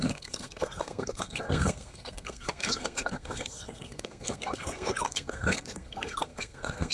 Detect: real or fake fake